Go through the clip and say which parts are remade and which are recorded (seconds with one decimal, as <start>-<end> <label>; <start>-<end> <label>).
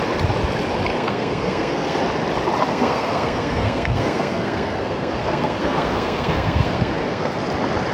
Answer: 0.0-0.9 recorded; 0.9-2.0 remade; 2.0-2.7 recorded; 2.7-7.4 remade; 7.4-7.9 recorded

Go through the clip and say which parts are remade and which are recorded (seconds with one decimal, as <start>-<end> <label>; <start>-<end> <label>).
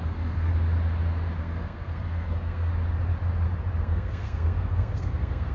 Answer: 0.0-0.5 remade; 0.5-1.4 recorded; 1.4-2.7 remade; 2.7-3.8 recorded; 3.8-5.5 remade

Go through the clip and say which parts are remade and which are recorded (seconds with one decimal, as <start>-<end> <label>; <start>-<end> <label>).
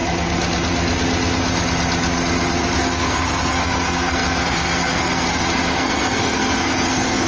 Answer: 0.0-2.8 recorded; 2.8-7.3 remade